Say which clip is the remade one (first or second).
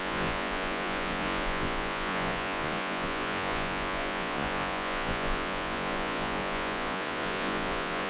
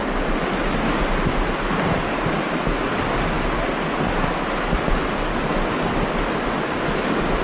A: first